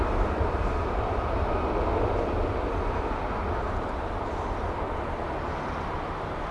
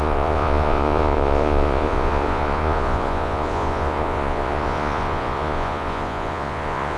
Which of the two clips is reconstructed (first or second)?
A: second